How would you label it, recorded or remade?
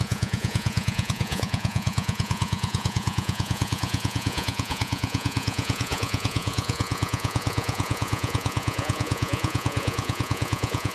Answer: remade